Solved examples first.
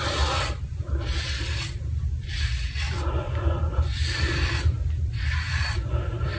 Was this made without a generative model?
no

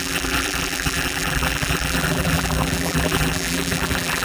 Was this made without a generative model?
no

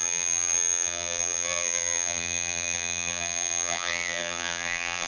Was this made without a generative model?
no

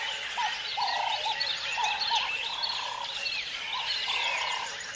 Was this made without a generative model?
yes